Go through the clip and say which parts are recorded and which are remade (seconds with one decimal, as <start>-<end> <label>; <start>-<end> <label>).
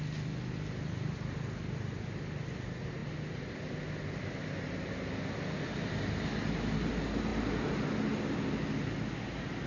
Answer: 0.0-9.7 recorded